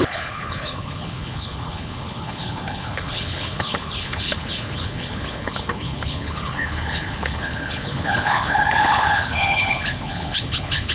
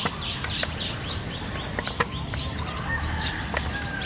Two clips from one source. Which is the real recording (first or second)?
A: second